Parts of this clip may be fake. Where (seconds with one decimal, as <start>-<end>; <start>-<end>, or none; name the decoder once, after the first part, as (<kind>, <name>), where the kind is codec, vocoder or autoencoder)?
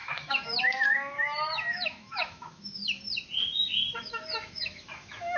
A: 0.0-2.8 (autoencoder, DAC-VAE); 4.0-5.4